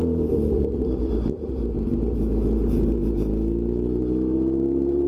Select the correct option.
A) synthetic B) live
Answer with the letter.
B